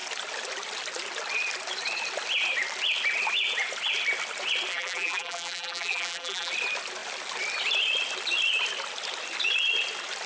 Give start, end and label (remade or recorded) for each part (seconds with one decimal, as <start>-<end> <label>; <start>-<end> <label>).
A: 0.0-4.7 recorded; 4.7-6.5 remade; 6.5-10.3 recorded